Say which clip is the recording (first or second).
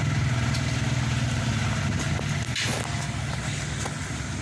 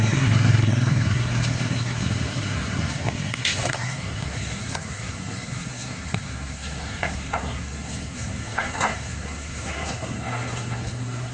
first